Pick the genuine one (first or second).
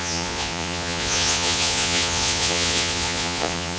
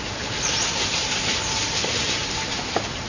second